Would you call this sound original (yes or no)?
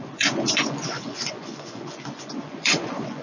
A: no